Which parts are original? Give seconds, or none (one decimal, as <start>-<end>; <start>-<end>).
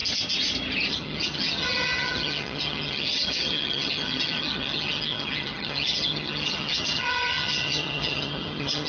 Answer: 0.0-0.9